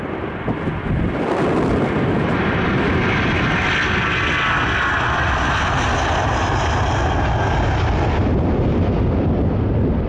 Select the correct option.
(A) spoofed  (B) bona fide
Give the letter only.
B